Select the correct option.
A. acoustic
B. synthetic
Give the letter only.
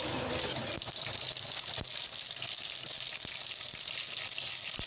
A